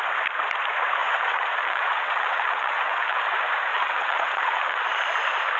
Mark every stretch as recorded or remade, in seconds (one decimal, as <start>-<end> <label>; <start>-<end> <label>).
0.0-1.0 recorded; 1.0-3.2 remade; 3.2-3.7 recorded; 3.7-4.8 remade; 4.8-5.6 recorded